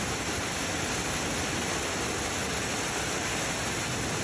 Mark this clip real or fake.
real